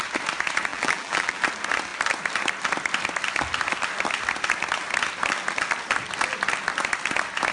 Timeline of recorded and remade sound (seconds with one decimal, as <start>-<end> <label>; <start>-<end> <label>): 0.0-0.7 recorded; 0.7-1.4 remade; 1.4-7.5 recorded